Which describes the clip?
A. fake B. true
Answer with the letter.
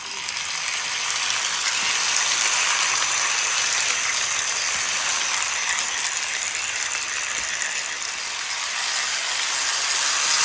B